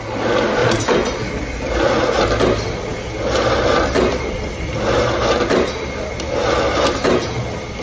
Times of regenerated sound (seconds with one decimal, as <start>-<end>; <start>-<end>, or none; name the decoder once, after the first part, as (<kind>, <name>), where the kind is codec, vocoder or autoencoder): 0.6-2.2 (vocoder, BigVGAN v2)